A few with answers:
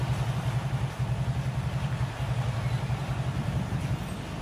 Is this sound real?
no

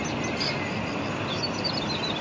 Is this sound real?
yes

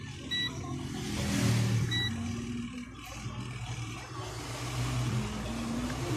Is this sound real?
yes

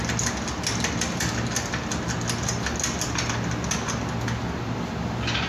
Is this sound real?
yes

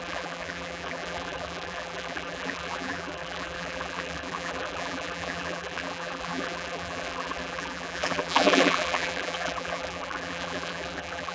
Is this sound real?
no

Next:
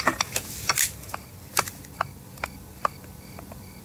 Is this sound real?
no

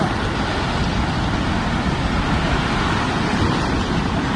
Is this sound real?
yes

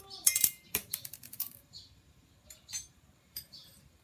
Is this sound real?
no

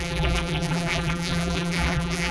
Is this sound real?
no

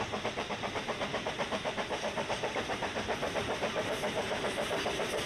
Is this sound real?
no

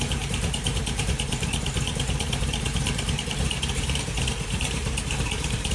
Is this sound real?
no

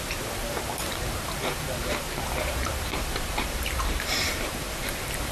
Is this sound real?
no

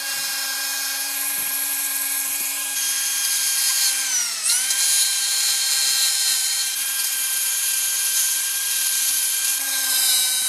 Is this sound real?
no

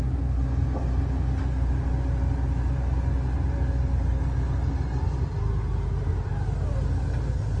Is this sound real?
yes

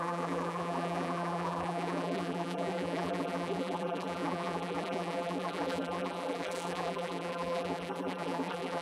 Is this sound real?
no